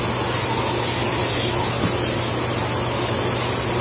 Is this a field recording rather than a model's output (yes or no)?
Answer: yes